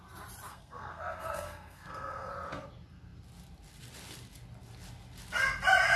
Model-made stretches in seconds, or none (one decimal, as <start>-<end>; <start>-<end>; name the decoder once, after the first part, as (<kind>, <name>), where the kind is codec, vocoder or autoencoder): 0.5-2.3 (codec, SNAC)